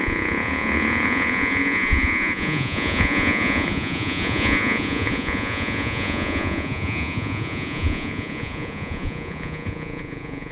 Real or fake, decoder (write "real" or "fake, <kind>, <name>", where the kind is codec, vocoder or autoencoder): fake, vocoder, Vocos